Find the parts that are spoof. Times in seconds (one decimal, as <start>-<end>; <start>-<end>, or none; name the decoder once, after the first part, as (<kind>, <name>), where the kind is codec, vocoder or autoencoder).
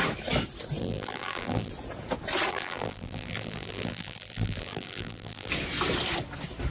0.8-1.7 (vocoder, BigVGAN v2); 2.5-5.5